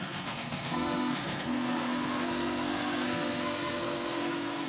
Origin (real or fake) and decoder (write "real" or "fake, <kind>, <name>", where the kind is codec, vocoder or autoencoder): fake, codec, SNAC